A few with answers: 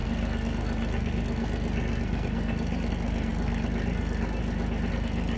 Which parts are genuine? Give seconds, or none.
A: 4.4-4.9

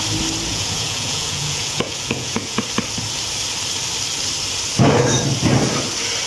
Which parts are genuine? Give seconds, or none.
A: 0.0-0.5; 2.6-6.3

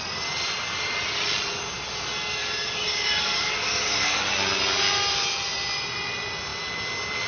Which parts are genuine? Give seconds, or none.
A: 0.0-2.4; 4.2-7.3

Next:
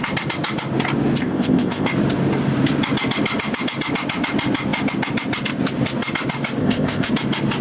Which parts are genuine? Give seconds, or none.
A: 0.0-1.2; 1.9-6.6; 7.1-7.6